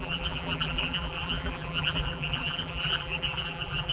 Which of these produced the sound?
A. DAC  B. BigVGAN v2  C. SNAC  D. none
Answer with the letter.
B